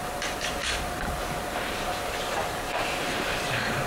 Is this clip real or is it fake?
fake